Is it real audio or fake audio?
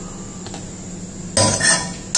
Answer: real